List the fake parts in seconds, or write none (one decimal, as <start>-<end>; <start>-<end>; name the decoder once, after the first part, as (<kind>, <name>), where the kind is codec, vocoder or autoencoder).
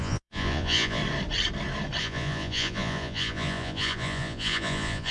0.0-1.0 (vocoder, Vocos); 2.0-5.1